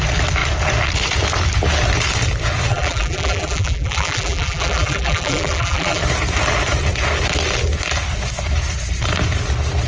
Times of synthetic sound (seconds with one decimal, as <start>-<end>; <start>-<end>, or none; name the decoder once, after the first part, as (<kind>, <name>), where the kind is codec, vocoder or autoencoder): 2.7-6.0 (vocoder, BigVGAN v2)